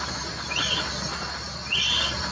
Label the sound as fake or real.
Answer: real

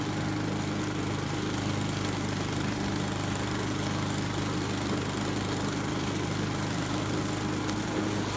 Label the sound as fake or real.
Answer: real